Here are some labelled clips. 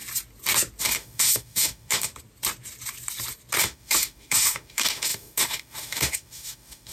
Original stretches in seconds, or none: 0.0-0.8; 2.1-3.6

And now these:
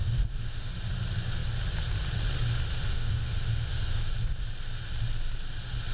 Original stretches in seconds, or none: 0.7-2.9; 4.0-5.9